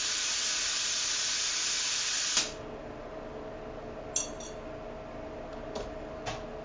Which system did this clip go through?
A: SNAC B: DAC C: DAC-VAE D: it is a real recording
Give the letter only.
D